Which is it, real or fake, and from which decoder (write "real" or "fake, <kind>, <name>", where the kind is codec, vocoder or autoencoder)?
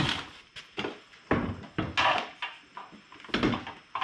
real